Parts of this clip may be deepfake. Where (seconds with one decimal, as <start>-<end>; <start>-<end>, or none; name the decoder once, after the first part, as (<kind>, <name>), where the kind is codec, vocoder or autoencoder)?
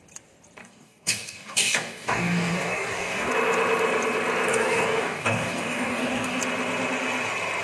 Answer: 0.6-3.3 (codec, DAC); 4.5-6.4